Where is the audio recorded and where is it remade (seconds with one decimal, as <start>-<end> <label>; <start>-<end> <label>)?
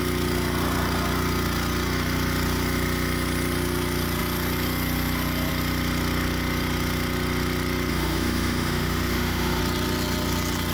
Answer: 0.0-7.9 recorded; 7.9-9.6 remade; 9.6-10.7 recorded